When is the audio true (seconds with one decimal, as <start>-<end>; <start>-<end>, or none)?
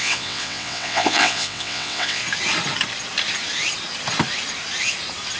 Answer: 2.2-5.4